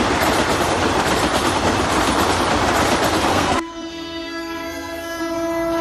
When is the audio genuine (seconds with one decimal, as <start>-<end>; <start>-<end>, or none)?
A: 0.0-3.3; 5.2-5.8